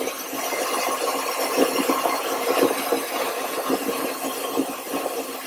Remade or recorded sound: recorded